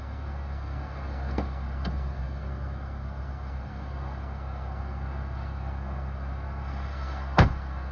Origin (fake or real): fake